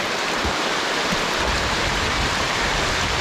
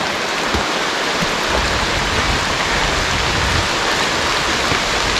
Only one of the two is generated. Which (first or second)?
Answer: first